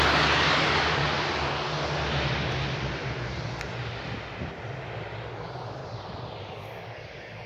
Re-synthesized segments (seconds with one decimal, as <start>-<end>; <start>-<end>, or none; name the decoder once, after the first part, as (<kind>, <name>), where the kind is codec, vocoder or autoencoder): 0.0-1.0 (codec, DAC); 5.3-5.8; 6.4-7.5